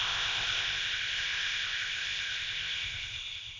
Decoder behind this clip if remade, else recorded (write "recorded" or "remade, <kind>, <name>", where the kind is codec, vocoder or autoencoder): remade, codec, ZipCodec